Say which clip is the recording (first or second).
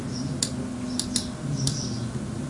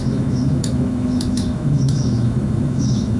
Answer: first